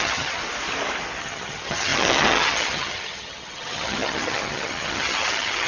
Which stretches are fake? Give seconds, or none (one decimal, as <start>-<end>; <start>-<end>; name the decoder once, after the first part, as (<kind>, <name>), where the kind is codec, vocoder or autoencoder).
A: 0.0-0.4 (vocoder, HiFi-GAN); 1.2-5.7